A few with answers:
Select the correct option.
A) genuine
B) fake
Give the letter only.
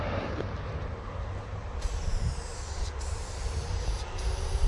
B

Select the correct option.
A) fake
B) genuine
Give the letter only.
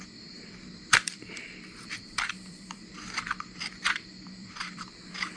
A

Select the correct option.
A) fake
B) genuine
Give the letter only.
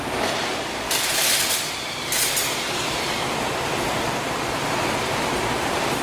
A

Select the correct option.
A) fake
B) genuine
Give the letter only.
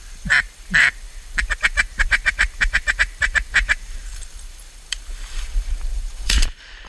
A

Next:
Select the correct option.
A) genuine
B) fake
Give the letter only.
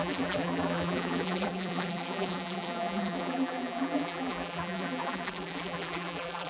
B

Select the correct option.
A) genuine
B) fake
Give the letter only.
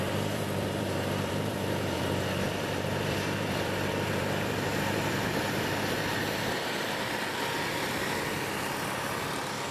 B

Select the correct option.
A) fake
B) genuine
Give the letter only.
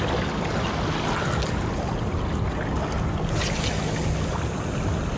B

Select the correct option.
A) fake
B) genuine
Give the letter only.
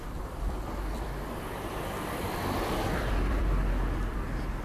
A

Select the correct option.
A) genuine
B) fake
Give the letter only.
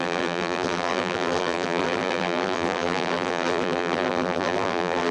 B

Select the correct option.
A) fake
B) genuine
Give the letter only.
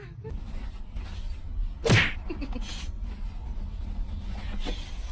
B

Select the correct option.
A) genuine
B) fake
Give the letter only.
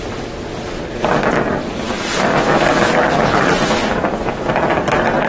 A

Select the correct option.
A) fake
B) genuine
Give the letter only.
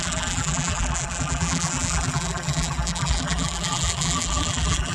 A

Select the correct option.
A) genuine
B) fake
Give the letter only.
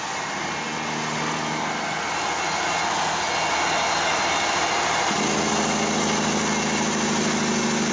A